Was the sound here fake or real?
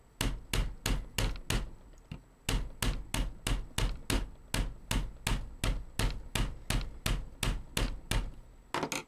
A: real